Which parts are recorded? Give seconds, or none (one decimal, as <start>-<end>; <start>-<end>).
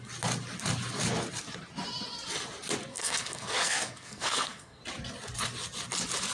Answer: 0.0-2.9; 4.8-6.3